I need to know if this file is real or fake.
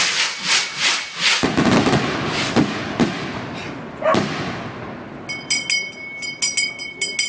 real